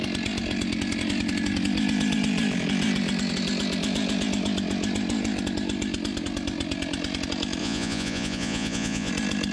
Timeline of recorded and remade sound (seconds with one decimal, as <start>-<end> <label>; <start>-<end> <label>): 0.0-7.6 recorded; 7.6-9.1 remade; 9.1-9.5 recorded